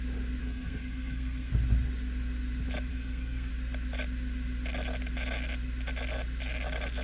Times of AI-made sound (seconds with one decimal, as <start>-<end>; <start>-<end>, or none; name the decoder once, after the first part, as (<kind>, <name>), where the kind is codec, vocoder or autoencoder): 0.4-1.5 (codec, SNAC); 2.9-3.5